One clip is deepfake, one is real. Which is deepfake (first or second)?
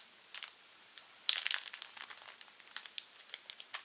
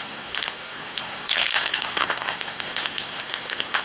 second